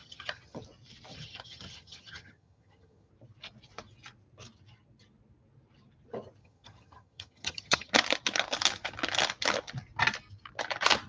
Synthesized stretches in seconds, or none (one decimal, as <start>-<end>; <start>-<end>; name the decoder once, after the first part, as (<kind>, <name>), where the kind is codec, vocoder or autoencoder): 0.0-0.6 (vocoder, HiFi-GAN); 1.1-3.1; 6.4-7.9